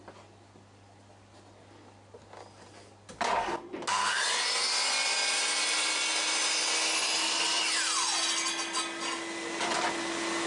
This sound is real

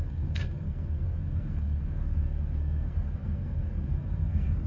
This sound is fake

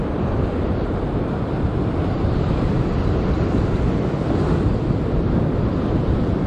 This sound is real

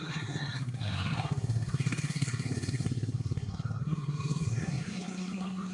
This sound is fake